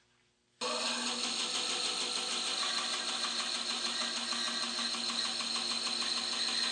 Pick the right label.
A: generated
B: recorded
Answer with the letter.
B